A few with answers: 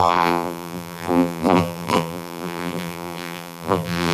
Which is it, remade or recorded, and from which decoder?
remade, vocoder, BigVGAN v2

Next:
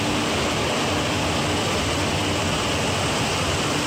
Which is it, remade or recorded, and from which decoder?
recorded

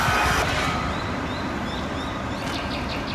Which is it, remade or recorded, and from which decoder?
recorded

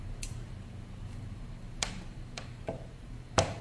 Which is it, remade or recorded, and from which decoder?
remade, vocoder, BigVGAN v2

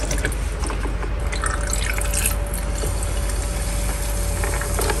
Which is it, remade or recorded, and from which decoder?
recorded